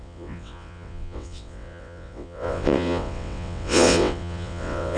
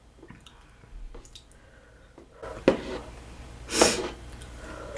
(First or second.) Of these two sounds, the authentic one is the second